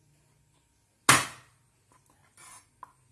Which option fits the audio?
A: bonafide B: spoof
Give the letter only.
A